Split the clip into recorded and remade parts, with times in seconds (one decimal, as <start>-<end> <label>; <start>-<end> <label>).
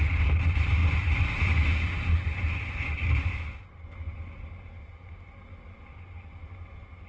0.0-7.1 recorded